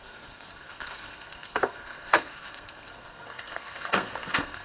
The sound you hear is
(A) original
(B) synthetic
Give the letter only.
B